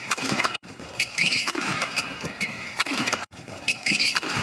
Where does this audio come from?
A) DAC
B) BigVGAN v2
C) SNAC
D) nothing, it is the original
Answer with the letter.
C